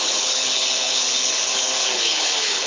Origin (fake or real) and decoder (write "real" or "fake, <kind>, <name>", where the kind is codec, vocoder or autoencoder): fake, codec, HILCodec